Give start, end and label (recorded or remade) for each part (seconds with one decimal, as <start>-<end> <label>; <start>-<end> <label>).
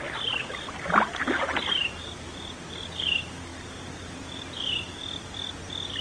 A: 0.0-6.0 recorded